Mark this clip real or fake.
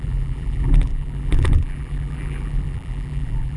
fake